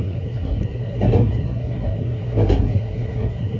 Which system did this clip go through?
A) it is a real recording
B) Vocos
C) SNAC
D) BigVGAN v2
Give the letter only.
C